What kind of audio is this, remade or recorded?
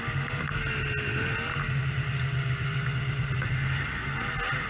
recorded